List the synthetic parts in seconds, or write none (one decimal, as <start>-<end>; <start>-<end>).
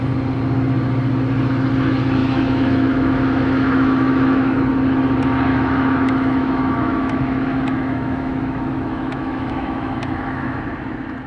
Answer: 2.2-4.6; 5.5-10.6